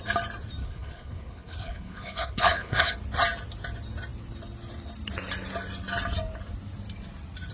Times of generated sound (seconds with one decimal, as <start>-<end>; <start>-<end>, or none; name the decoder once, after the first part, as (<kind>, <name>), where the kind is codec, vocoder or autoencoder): 0.6-2.9 (codec, HILCodec)